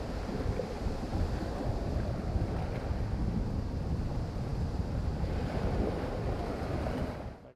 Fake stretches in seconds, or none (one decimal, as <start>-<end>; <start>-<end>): none